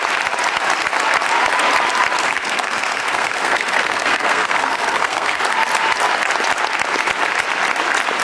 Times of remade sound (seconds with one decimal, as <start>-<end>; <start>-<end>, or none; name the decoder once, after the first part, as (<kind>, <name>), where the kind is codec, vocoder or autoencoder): 2.2-5.4 (codec, SNAC)